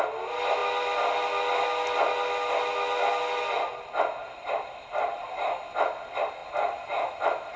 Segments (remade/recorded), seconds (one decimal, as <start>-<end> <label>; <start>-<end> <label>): 0.0-4.2 recorded; 4.2-5.2 remade; 5.2-6.4 recorded; 6.4-7.6 remade